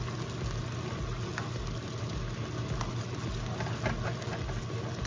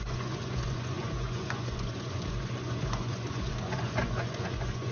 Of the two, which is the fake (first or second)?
second